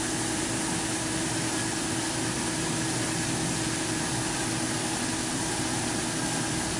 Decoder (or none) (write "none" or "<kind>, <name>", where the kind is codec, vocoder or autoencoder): none